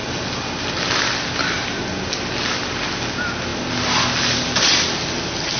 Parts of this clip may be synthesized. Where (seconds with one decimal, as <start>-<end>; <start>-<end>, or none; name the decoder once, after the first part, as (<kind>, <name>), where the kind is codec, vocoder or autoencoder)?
none